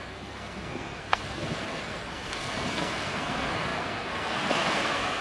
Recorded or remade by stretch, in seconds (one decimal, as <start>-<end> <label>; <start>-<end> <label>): 0.0-5.2 remade